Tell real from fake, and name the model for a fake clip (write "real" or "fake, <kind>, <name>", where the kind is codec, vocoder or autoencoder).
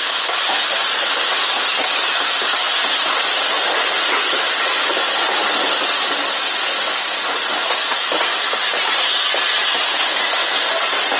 real